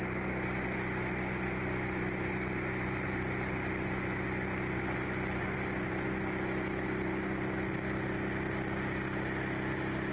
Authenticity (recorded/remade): recorded